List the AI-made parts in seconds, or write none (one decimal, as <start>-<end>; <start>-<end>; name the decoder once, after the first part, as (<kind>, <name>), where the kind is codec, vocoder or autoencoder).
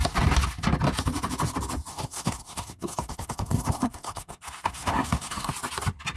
1.9-5.5 (codec, SNAC)